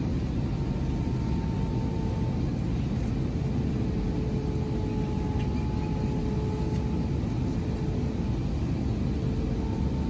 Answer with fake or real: real